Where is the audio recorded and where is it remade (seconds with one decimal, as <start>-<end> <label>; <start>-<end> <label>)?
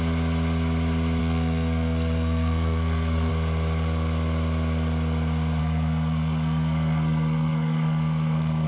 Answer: 0.0-1.2 recorded; 1.2-3.3 remade; 3.3-5.6 recorded; 5.6-8.7 remade